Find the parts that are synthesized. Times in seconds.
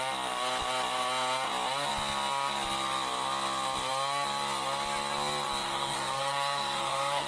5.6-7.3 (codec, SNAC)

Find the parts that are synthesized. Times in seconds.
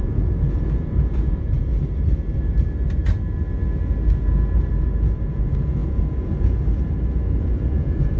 0.0-1.7 (vocoder, Vocos); 4.7-8.2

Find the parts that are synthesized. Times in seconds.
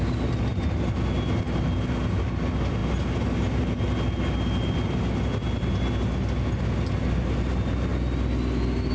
none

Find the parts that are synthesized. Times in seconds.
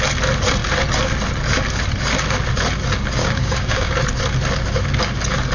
3.2-3.9 (codec, DAC)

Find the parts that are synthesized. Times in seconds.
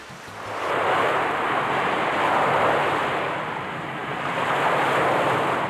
none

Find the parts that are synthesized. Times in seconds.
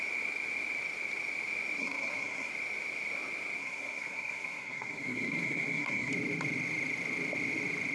1.8-2.5 (codec, SNAC); 3.6-6.1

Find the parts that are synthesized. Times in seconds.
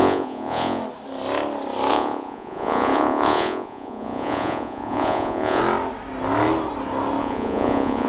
0.0-0.8 (vocoder, Vocos); 1.9-5.6; 7.2-8.1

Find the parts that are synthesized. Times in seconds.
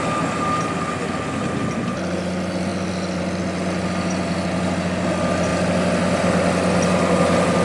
none